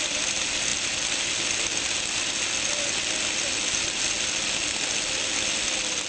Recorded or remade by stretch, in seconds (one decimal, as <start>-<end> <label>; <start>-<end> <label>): 0.0-6.1 recorded